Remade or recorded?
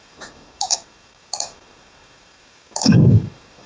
remade